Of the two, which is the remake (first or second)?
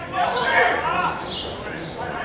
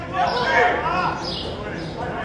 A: first